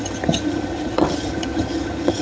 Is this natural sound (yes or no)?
no